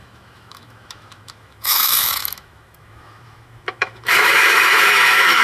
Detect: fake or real fake